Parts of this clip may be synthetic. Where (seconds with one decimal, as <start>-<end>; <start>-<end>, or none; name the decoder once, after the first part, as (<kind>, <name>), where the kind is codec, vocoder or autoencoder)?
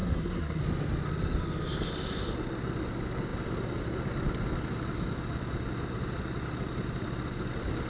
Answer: 0.0-0.6 (codec, SNAC)